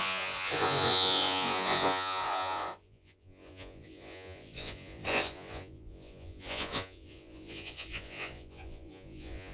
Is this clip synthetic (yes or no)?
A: yes